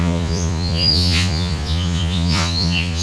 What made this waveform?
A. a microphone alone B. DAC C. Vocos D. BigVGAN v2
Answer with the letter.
C